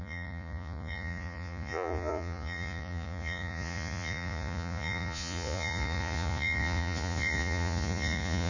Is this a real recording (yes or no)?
no